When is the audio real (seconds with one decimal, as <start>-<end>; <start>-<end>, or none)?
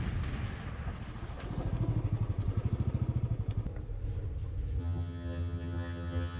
0.0-4.8